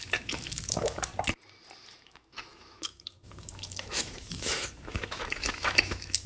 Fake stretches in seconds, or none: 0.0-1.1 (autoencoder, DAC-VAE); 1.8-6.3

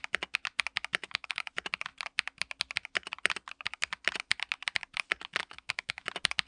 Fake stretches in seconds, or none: 1.0-1.5 (autoencoder, DAC-VAE); 5.4-6.0

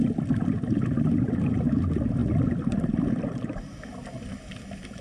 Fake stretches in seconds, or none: none

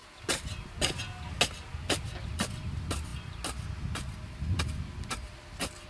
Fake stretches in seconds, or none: none

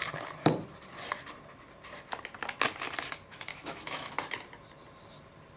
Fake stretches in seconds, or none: 3.5-4.1 (autoencoder, DAC-VAE)

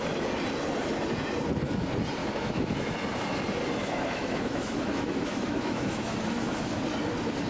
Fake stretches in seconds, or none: 2.2-2.8 (autoencoder, DAC-VAE); 3.8-6.8

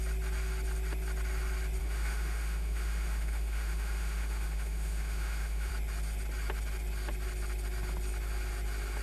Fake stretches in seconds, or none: 1.8-5.7 (autoencoder, DAC-VAE)